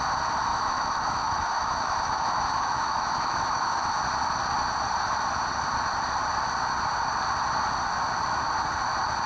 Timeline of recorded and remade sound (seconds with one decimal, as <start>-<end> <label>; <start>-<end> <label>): 0.0-0.5 recorded; 0.5-4.0 remade; 4.0-9.3 recorded